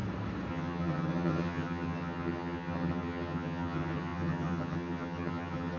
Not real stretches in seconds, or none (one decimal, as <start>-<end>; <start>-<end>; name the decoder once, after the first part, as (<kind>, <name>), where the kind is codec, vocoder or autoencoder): 0.5-5.8 (vocoder, HiFi-GAN)

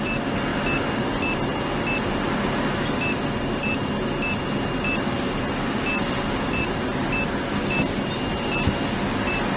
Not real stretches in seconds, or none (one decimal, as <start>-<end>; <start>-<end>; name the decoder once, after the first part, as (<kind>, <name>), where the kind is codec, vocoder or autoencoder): none

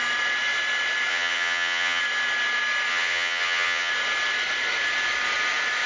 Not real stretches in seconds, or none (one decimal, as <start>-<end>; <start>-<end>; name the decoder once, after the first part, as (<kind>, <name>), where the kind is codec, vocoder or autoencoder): 1.1-2.0 (vocoder, HiFi-GAN); 2.9-3.9

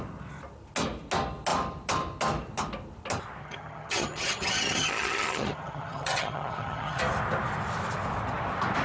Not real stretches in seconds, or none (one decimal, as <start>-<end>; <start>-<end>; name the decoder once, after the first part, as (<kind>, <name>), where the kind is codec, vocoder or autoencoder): 3.4-7.0 (vocoder, HiFi-GAN)

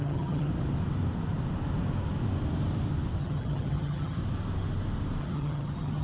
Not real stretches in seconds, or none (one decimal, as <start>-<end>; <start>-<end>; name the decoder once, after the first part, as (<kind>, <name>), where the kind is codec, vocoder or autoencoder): 0.0-0.5 (vocoder, HiFi-GAN); 3.2-4.2; 5.2-6.0

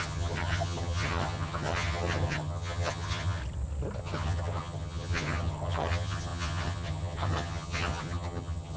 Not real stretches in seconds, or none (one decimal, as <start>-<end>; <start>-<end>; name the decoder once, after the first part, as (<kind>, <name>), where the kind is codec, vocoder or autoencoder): 0.0-3.4 (vocoder, HiFi-GAN); 4.0-8.8

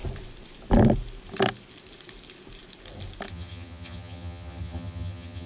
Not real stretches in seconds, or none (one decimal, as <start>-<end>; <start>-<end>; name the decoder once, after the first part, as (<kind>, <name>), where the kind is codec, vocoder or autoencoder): 3.3-5.5 (vocoder, HiFi-GAN)

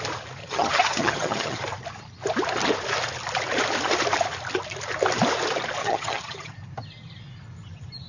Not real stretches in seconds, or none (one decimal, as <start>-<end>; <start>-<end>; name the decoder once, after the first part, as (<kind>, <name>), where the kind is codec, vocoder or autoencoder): 0.4-1.6 (vocoder, HiFi-GAN); 5.8-6.5